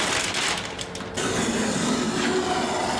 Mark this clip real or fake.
real